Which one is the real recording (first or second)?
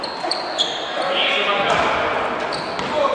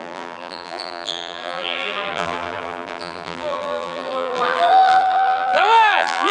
first